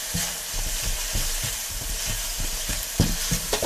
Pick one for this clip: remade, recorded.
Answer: remade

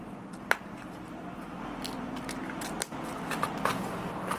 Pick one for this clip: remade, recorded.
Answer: recorded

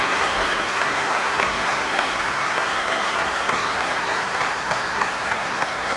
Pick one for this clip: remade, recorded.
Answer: remade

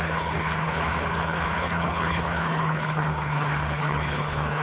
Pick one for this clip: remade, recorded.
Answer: remade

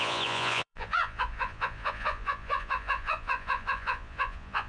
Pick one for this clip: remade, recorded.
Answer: remade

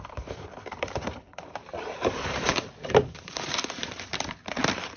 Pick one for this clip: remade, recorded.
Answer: remade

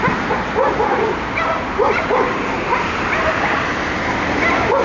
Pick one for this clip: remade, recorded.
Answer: recorded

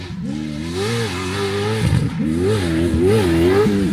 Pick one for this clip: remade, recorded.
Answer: recorded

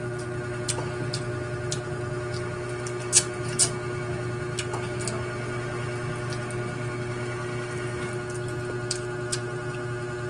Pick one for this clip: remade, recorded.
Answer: recorded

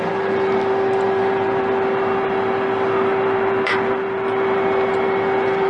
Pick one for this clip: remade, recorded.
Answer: remade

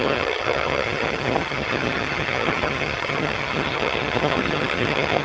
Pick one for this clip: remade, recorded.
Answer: remade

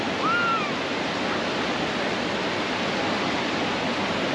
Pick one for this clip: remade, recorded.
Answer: recorded